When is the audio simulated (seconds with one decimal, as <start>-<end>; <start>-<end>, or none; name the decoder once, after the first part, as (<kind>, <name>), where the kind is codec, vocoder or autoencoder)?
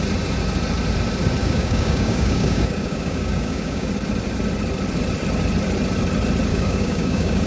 1.4-3.9 (codec, DAC); 6.5-7.5